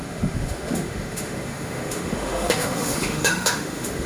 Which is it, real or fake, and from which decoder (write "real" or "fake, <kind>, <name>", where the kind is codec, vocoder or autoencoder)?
fake, autoencoder, DAC-VAE